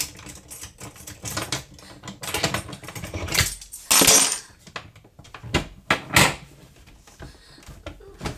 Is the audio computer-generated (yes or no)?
no